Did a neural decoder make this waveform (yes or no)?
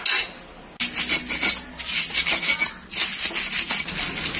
no